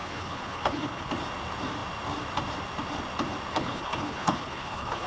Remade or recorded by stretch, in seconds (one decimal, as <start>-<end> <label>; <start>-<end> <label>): 0.0-1.1 remade; 1.1-3.5 recorded; 3.5-5.1 remade